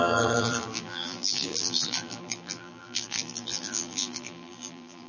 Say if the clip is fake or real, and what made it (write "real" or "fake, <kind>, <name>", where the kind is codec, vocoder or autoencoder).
fake, vocoder, BigVGAN v2